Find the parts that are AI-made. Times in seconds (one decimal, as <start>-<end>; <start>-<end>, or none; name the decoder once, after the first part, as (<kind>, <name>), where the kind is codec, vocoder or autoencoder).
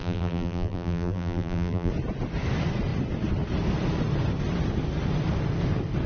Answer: 0.0-1.9 (vocoder, BigVGAN v2)